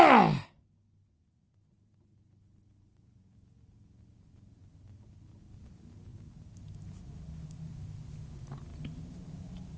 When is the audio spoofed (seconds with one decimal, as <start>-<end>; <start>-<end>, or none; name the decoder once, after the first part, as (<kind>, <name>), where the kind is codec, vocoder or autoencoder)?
none